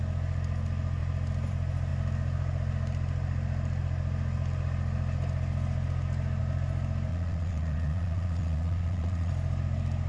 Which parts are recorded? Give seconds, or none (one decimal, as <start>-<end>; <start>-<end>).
0.0-7.1; 9.3-10.1